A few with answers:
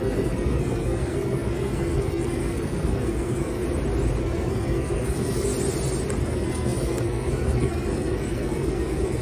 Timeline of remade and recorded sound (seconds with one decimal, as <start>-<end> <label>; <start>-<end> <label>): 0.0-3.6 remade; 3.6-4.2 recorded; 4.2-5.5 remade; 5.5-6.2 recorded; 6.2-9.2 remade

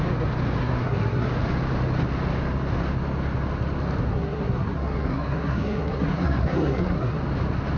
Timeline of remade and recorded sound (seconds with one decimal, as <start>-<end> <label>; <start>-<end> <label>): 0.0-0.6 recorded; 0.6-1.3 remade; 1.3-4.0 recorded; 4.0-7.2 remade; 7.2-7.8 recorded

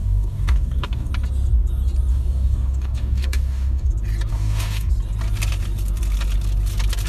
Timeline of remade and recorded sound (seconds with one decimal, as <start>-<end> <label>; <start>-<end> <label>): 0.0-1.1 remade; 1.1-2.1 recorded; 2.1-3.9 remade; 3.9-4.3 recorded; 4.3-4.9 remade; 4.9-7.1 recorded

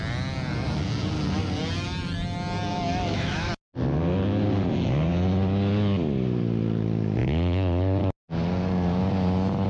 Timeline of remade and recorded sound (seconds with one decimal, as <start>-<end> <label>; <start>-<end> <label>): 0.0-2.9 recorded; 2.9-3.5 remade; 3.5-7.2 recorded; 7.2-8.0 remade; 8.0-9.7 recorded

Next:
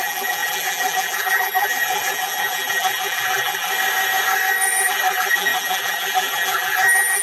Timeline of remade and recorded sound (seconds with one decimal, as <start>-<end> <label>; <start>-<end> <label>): 0.0-3.7 remade; 3.7-4.8 recorded; 4.8-7.2 remade

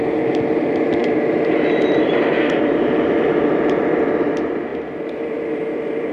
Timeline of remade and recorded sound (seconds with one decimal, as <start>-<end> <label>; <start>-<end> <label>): 0.0-6.1 remade